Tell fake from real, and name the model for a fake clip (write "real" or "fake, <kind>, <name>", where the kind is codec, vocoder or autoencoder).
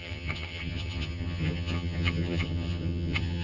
fake, vocoder, HiFi-GAN